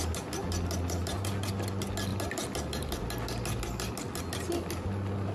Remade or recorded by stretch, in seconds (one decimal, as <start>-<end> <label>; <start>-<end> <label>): 0.0-5.3 recorded